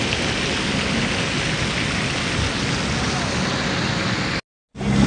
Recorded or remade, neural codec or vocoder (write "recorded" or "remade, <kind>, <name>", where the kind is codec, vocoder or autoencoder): recorded